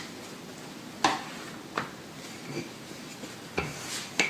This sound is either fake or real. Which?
real